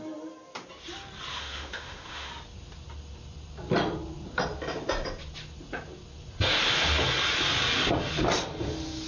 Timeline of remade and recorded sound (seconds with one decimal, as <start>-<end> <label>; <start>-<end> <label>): 0.0-1.3 recorded; 1.3-2.3 remade; 2.3-9.1 recorded